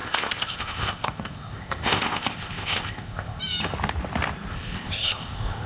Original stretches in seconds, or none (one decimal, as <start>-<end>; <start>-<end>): 3.4-4.5